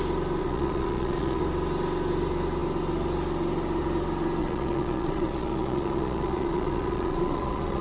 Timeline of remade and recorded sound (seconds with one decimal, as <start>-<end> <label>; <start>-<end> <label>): 0.0-0.4 recorded; 0.4-1.4 remade; 1.4-4.4 recorded; 4.4-7.8 remade